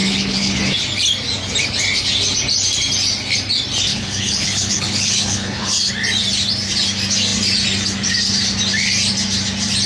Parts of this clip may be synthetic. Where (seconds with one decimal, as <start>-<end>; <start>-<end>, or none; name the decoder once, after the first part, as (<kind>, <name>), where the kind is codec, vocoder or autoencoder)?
0.0-0.6 (codec, HILCodec); 3.9-5.9